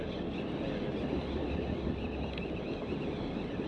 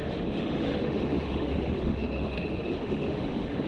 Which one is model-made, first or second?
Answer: second